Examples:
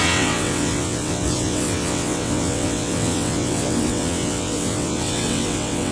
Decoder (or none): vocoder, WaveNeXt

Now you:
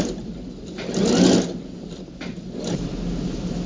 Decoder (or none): none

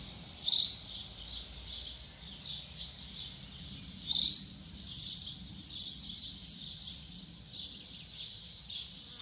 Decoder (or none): none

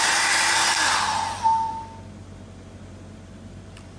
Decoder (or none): none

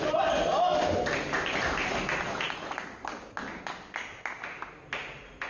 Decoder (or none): none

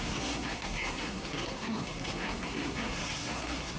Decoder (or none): codec, SNAC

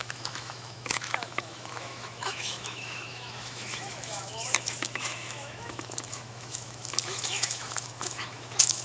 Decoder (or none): autoencoder, DAC-VAE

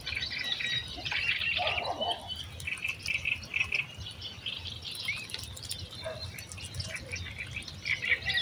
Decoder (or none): none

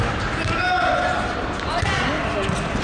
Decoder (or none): none